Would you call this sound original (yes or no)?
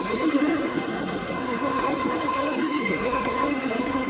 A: no